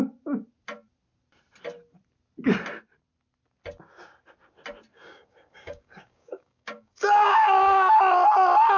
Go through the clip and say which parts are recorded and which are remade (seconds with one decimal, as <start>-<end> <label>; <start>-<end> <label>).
0.0-4.9 recorded; 4.9-7.9 remade; 7.9-8.8 recorded